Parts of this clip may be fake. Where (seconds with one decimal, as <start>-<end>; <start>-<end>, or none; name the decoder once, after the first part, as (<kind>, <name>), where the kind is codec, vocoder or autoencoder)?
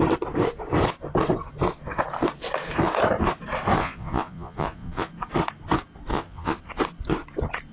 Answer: 3.8-5.1 (vocoder, Vocos); 6.1-6.6